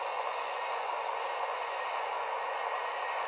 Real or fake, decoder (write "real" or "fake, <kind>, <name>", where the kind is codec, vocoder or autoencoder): fake, vocoder, Vocos